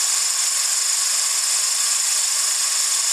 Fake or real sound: real